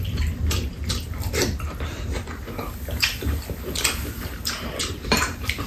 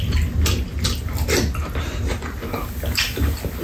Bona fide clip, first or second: second